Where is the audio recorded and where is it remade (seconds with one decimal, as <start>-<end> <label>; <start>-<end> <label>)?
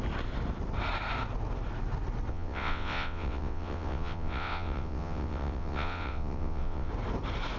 0.0-2.3 recorded; 2.3-6.9 remade; 6.9-7.6 recorded